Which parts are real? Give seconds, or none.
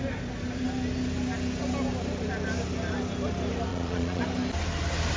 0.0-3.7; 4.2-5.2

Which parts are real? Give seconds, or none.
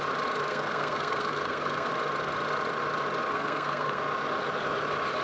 0.0-0.5; 1.9-3.3; 4.0-5.2